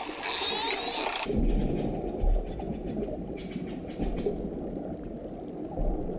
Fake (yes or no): no